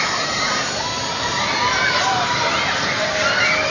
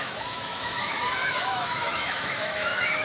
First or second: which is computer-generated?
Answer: second